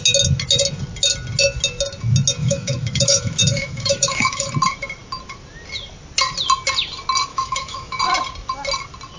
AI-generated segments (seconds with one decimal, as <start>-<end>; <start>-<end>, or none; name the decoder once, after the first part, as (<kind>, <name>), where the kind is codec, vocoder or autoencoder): 2.4-4.5 (autoencoder, DAC-VAE); 7.3-8.0